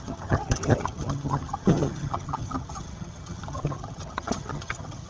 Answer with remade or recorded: remade